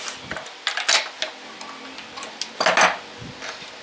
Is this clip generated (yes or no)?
no